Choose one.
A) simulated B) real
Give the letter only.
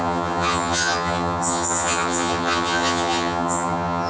A